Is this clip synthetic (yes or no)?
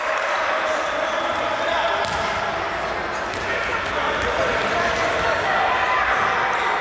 no